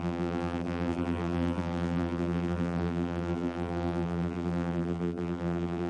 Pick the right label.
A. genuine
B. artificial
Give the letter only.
B